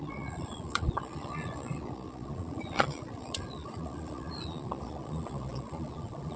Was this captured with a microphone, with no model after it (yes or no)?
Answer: no